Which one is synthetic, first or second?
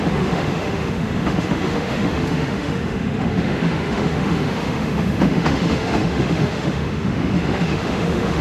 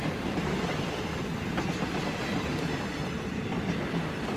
first